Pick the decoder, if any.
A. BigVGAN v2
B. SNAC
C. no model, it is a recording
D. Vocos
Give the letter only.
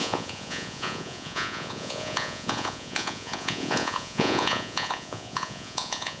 D